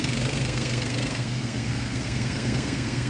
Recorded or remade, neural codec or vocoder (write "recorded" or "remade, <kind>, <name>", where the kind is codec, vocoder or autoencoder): remade, codec, SNAC